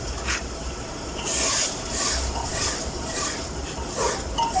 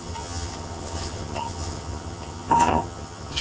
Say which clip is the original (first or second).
first